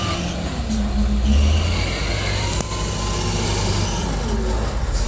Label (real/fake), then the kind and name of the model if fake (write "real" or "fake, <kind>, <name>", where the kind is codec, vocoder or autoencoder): real